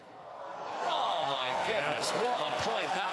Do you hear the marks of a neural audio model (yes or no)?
yes